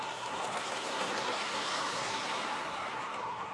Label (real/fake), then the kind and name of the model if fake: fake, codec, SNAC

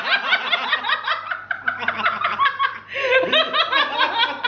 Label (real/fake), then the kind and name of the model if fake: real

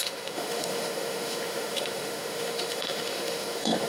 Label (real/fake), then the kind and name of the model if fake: fake, autoencoder, DAC-VAE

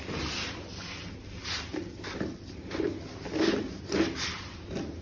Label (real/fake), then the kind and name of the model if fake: real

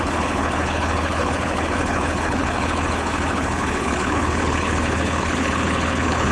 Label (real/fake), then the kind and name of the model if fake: fake, codec, HILCodec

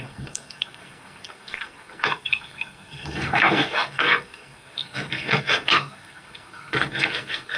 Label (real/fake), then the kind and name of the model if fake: fake, codec, SNAC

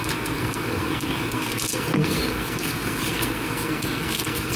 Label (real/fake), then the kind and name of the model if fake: fake, codec, SNAC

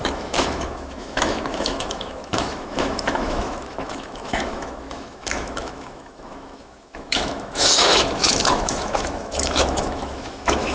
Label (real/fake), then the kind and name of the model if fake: fake, autoencoder, DAC-VAE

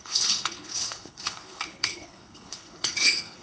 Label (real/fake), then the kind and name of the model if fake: fake, codec, HILCodec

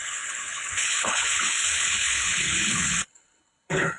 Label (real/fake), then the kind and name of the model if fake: fake, codec, HILCodec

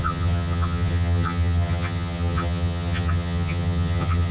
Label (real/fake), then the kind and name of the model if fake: fake, vocoder, HiFi-GAN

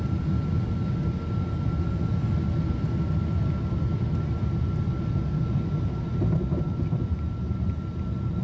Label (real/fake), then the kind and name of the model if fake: real